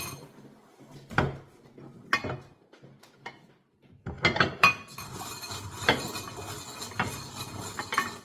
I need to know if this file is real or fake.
real